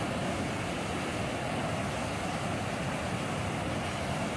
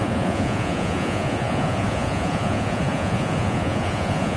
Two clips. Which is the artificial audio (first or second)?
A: second